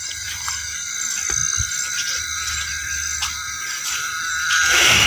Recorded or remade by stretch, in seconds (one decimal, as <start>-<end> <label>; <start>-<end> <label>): 0.0-5.1 recorded